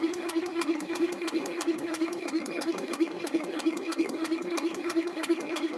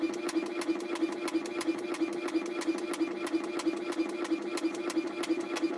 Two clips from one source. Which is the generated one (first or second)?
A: first